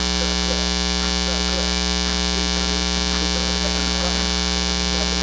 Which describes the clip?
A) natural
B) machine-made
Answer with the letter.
A